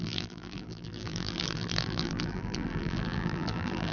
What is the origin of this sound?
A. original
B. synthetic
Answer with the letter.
B